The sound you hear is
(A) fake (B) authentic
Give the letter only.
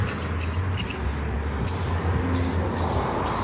B